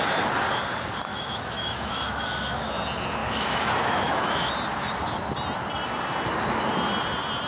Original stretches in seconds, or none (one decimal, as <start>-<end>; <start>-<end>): 0.0-1.1; 2.7-3.2; 4.5-7.5